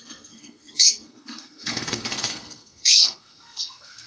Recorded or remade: remade